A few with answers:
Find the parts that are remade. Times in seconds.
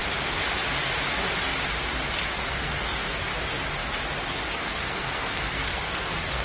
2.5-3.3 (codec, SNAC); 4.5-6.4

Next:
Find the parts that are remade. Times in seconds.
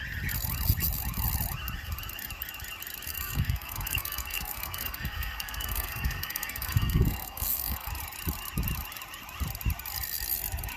3.1-7.9 (codec, SNAC)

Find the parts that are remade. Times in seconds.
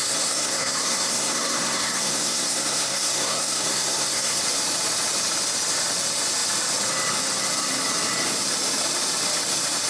0.0-4.4 (codec, SNAC)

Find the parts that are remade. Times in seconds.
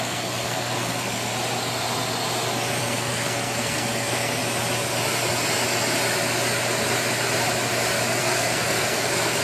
0.0-1.3 (codec, SNAC); 2.8-4.4; 8.2-9.4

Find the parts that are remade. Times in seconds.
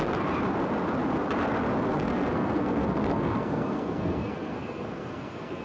1.9-5.6 (codec, SNAC)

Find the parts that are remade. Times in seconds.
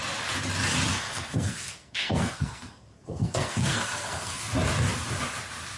0.9-4.4 (codec, SNAC)